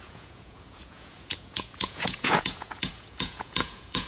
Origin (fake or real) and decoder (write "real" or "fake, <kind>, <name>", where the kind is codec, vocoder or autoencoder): fake, vocoder, Vocos